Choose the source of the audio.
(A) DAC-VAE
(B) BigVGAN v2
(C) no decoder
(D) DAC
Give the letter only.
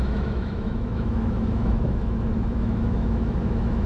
A